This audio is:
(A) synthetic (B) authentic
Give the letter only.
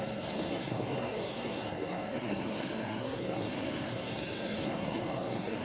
A